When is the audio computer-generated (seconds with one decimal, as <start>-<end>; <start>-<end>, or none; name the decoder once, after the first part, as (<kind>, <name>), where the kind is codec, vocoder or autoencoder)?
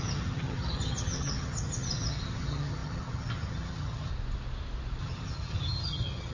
0.0-4.1 (vocoder, HiFi-GAN); 5.0-6.3